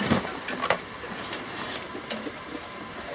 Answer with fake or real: real